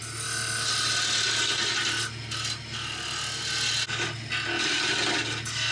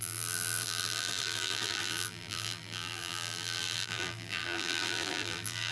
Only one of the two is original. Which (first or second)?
first